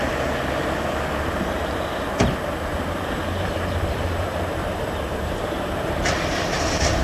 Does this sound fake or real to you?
fake